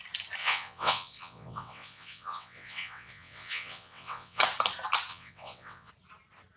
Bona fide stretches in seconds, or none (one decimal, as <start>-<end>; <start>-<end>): 0.0-0.4; 4.4-5.1; 5.9-6.6